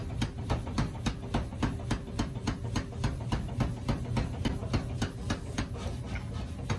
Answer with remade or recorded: recorded